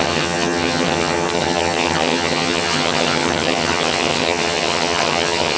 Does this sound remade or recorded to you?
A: remade